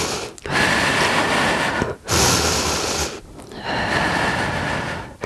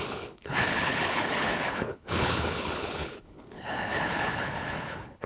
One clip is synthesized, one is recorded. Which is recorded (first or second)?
first